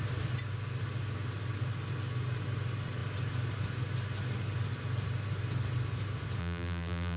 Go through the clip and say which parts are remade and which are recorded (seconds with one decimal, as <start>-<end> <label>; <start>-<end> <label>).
0.0-6.4 recorded; 6.4-7.2 remade